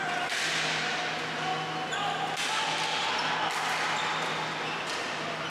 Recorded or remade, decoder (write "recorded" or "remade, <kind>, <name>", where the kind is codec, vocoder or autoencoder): recorded